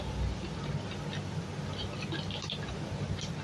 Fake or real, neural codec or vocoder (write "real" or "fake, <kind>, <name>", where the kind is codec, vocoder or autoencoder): real